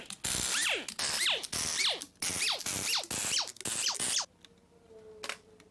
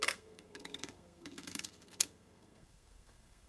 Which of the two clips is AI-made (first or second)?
second